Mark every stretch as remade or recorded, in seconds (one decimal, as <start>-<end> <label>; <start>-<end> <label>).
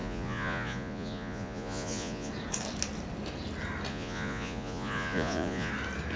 0.0-2.3 remade; 2.3-3.9 recorded; 3.9-5.7 remade; 5.7-6.2 recorded